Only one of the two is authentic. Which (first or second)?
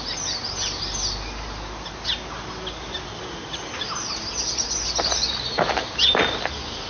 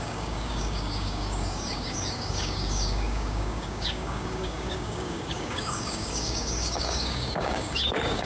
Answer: first